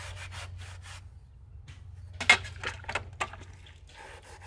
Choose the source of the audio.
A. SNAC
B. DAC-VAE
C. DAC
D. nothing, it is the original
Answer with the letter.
D